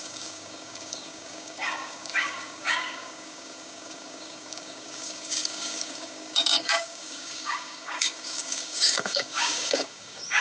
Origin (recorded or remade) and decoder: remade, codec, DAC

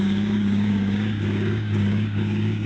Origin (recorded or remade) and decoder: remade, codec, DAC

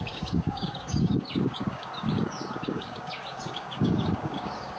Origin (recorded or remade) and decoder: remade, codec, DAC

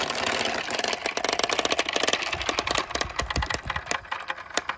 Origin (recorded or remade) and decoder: recorded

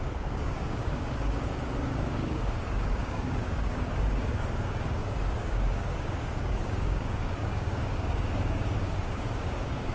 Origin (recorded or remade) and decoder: remade, codec, DAC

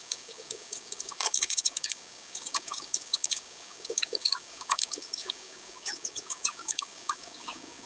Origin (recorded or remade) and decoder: remade, codec, DAC